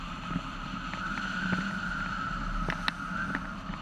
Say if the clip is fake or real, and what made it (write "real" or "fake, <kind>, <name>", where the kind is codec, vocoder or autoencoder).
real